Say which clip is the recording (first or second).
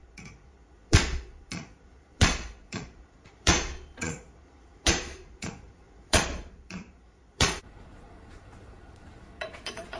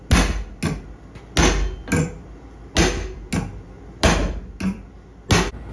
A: second